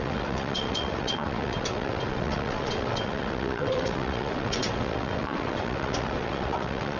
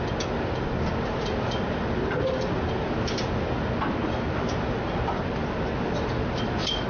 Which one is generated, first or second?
first